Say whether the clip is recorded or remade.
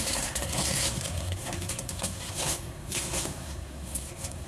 remade